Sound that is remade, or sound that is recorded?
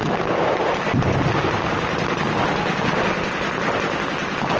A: recorded